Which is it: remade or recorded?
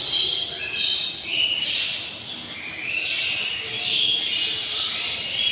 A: recorded